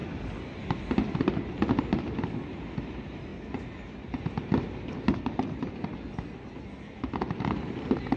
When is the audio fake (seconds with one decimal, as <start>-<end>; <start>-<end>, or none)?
none